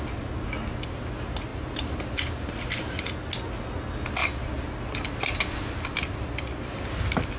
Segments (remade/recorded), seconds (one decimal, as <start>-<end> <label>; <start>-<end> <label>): 0.0-1.5 recorded; 1.5-3.1 remade; 3.1-4.2 recorded; 4.2-6.8 remade; 6.8-7.4 recorded